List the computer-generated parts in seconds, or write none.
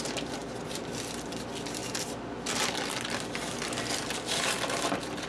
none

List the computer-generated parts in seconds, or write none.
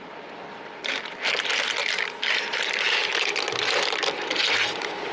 none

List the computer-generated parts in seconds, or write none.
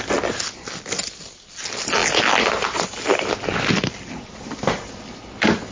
none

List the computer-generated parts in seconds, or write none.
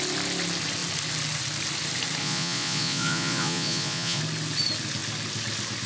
2.2-4.2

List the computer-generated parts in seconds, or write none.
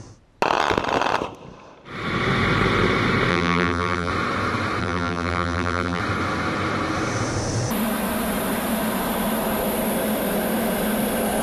3.3-4.1; 4.8-6.0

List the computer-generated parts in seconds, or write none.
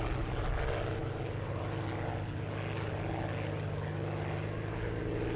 none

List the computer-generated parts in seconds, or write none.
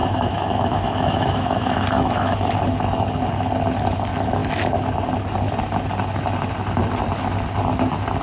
0.0-2.5